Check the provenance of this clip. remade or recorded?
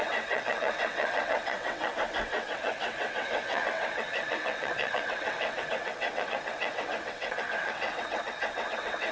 remade